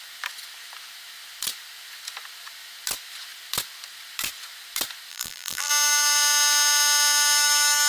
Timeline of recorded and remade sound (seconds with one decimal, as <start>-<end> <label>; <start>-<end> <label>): 0.0-5.1 recorded; 5.1-5.7 remade; 5.7-7.9 recorded